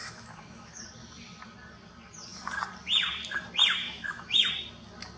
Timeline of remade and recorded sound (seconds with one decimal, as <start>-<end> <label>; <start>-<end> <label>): 0.0-0.8 remade; 0.8-3.8 recorded; 3.8-4.5 remade; 4.5-5.2 recorded